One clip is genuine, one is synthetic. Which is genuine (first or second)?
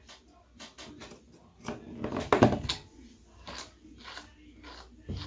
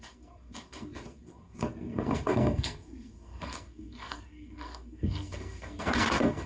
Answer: first